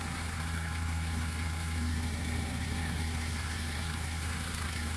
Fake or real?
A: fake